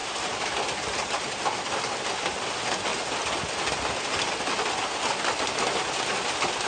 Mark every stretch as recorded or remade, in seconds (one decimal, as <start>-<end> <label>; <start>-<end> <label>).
0.0-6.7 recorded